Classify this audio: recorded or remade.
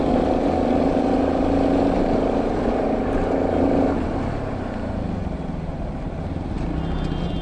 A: recorded